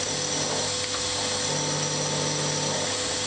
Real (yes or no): yes